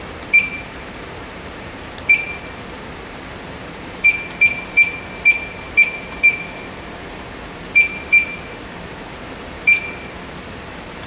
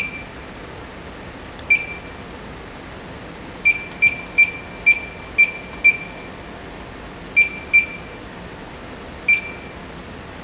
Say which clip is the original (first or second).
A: second